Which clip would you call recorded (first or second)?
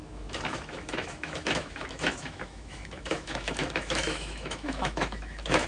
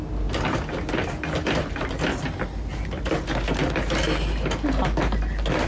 second